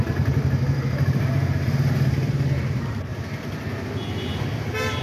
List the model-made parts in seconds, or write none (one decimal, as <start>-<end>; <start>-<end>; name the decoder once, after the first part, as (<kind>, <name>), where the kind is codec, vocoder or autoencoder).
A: 0.0-3.1 (vocoder, BigVGAN v2)